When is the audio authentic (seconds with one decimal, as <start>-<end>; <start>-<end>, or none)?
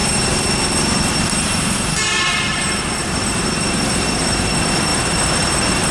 0.0-1.1